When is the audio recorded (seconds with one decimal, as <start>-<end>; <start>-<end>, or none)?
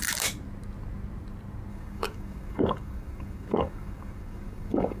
0.0-1.7